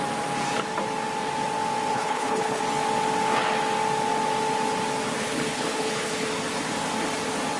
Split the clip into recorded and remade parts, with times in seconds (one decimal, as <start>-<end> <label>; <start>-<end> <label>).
0.0-1.9 recorded; 1.9-2.6 remade; 2.6-5.2 recorded; 5.2-6.3 remade; 6.3-7.6 recorded